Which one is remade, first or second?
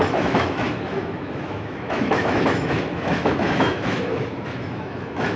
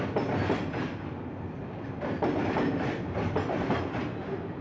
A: first